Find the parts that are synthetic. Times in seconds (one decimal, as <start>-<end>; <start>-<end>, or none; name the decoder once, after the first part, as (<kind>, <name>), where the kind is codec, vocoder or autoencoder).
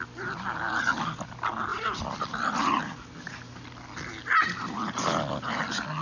none